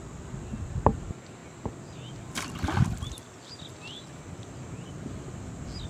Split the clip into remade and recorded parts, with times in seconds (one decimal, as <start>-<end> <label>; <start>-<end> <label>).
0.0-5.9 recorded